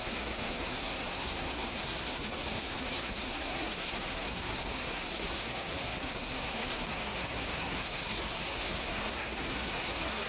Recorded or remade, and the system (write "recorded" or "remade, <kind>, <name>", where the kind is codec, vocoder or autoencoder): remade, codec, SNAC